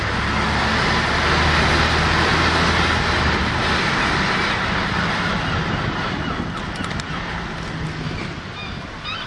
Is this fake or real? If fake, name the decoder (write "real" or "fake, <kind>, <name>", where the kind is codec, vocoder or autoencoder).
real